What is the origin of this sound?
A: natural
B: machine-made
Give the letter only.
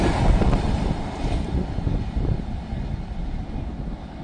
A